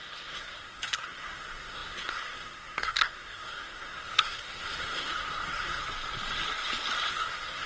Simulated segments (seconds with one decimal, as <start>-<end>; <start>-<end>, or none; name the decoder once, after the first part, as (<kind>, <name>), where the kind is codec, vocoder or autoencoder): 0.0-5.8 (codec, SNAC); 7.1-7.7